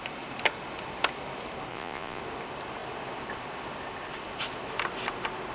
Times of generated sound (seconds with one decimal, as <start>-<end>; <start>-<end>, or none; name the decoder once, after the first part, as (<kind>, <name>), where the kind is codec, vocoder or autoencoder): 1.7-2.2 (vocoder, Vocos)